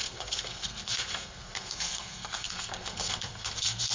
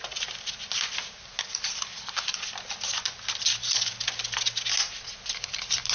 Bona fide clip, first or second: second